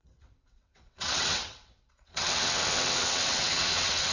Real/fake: fake